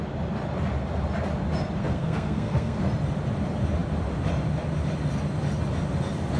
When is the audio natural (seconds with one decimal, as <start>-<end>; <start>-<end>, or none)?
0.0-1.8; 2.8-6.4